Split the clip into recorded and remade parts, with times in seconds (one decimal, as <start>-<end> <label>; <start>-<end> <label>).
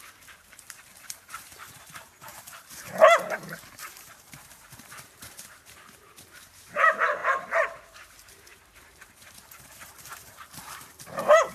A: 0.0-11.5 remade